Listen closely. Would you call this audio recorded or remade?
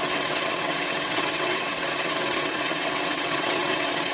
remade